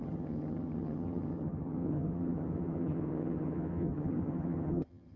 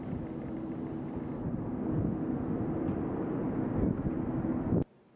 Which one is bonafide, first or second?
second